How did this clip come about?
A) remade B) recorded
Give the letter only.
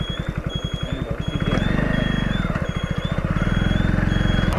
B